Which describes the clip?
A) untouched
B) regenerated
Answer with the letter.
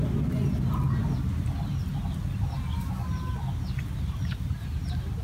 A